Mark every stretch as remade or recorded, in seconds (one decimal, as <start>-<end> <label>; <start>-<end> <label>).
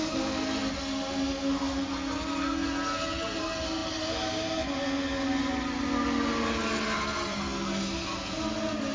0.0-8.9 recorded